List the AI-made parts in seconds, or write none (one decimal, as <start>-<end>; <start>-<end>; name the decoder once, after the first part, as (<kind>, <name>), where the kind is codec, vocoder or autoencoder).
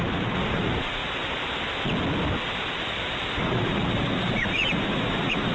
0.0-1.0 (vocoder, Vocos); 3.4-5.5